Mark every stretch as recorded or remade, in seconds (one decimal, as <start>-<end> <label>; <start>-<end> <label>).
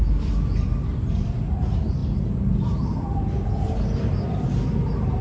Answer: 0.0-5.2 recorded